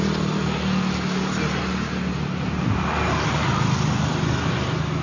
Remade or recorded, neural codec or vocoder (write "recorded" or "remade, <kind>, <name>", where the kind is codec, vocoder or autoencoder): recorded